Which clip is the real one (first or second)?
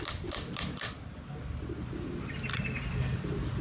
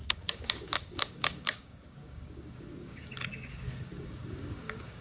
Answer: first